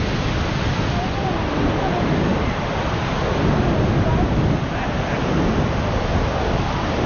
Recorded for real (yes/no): yes